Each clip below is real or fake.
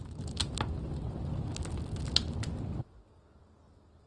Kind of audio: real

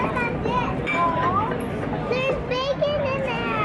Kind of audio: real